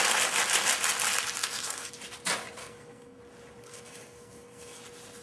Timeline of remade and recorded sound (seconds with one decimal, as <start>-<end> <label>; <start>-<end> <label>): 0.0-1.4 recorded; 1.4-1.9 remade; 1.9-2.6 recorded; 2.6-3.2 remade; 3.2-3.6 recorded; 3.6-4.8 remade; 4.8-5.2 recorded